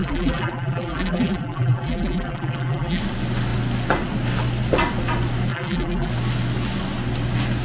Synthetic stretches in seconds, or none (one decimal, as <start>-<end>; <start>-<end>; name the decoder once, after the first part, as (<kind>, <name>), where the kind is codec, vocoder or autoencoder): 0.0-3.0 (vocoder, BigVGAN v2); 5.5-6.1